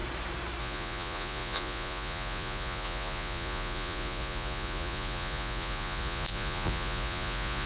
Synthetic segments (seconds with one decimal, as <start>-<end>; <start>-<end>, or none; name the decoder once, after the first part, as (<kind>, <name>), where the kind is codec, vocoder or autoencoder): 0.6-7.7 (vocoder, Vocos)